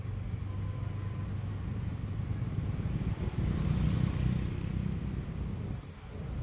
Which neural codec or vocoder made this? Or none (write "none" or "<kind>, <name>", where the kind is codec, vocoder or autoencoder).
none